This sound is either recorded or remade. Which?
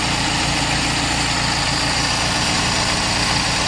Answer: recorded